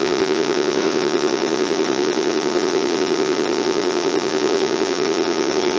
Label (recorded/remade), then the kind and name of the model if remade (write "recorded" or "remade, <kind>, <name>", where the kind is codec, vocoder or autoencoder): remade, vocoder, Vocos